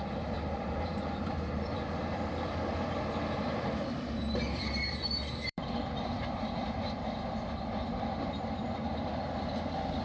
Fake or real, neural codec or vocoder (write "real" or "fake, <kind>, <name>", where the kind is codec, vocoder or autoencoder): fake, vocoder, BigVGAN v2